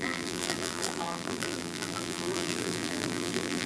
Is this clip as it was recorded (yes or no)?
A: no